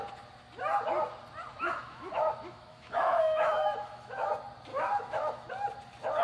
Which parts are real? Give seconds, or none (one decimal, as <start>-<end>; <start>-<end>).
0.0-1.5; 4.3-4.7; 5.5-6.2